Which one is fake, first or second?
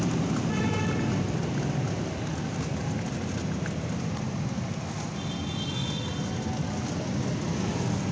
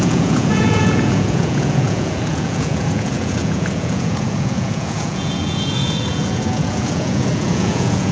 second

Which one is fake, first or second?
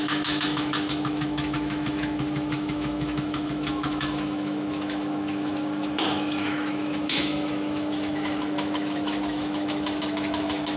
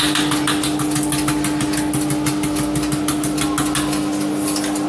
first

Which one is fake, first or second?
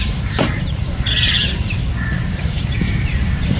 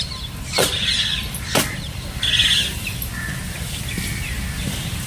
first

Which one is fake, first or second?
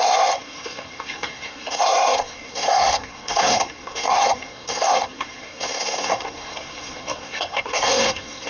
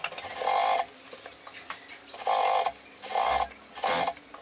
first